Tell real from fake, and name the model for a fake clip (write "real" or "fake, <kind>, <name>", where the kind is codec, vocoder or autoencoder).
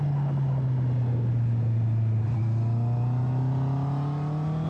real